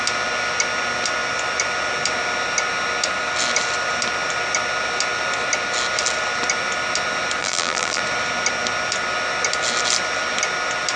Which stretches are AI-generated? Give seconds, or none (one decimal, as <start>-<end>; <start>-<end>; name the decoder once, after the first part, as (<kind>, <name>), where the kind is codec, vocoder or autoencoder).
7.4-8.0 (vocoder, BigVGAN v2)